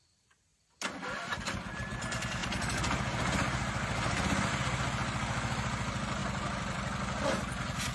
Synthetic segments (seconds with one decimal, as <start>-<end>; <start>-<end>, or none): 0.5-1.6; 6.2-7.2